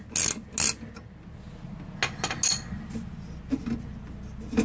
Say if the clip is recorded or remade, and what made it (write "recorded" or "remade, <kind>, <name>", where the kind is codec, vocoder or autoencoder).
recorded